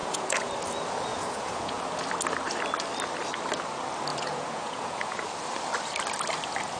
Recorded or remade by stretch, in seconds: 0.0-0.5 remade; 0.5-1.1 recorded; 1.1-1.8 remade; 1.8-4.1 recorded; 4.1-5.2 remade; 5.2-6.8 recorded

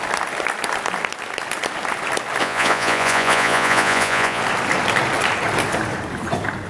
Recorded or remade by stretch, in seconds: 0.0-2.4 recorded; 2.4-4.4 remade; 4.4-6.7 recorded

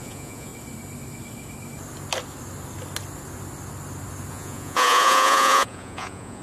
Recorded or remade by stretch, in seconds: 0.0-0.5 remade; 0.5-4.3 recorded; 4.3-6.4 remade